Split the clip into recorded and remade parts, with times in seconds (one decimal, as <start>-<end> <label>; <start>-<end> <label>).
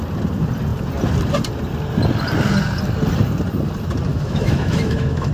0.0-4.1 recorded; 4.1-5.3 remade